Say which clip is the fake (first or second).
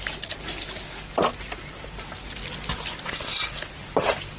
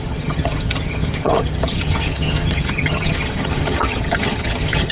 second